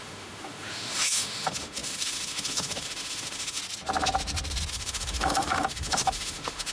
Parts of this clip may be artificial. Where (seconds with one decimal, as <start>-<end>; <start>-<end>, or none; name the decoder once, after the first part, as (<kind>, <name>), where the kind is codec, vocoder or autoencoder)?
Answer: 0.0-3.6 (autoencoder, DAC-VAE); 4.7-6.7